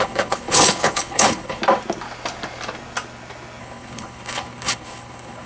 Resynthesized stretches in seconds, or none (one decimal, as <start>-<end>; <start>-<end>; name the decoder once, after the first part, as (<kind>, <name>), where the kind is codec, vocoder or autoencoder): 0.0-1.6 (codec, HILCodec); 3.6-5.5